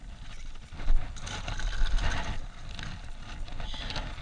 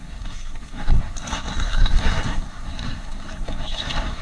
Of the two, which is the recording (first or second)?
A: first